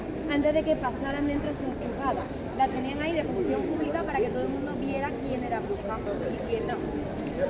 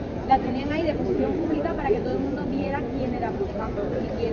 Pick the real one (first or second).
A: first